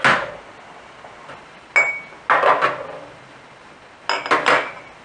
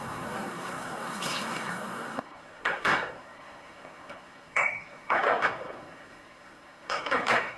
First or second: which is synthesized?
second